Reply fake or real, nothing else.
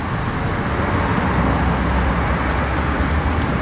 real